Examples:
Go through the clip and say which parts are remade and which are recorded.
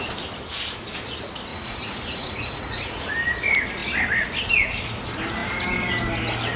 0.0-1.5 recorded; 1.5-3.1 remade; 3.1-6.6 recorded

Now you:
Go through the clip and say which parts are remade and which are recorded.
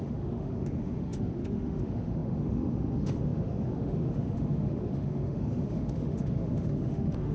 0.0-7.3 remade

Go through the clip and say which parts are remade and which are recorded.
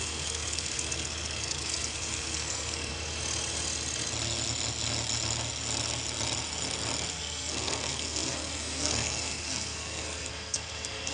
0.0-2.9 remade; 2.9-7.1 recorded; 7.1-11.1 remade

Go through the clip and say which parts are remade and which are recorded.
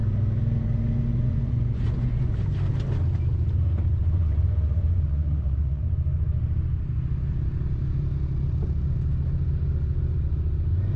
0.0-1.1 recorded; 1.1-2.3 remade; 2.3-4.0 recorded; 4.0-5.8 remade; 5.8-11.0 recorded